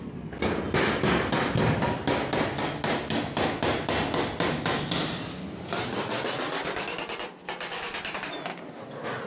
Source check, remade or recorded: recorded